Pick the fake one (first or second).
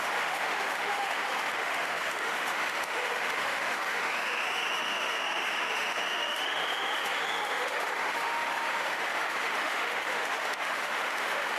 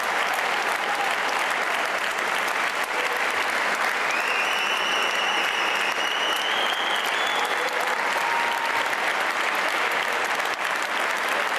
first